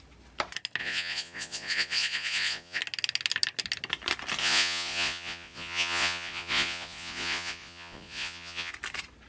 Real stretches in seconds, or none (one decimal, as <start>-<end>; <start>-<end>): 0.0-0.8; 2.8-4.4; 8.7-9.3